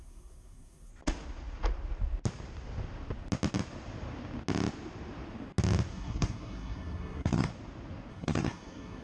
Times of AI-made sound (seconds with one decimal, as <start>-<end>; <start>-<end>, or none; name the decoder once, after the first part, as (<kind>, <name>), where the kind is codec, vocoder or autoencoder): 0.0-0.9 (codec, SNAC); 5.9-7.5; 8.1-9.0